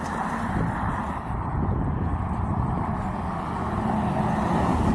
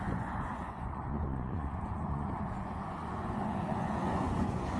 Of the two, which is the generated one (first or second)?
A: second